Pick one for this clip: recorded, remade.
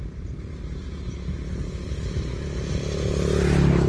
recorded